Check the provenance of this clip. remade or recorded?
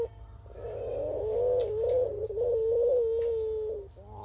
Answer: recorded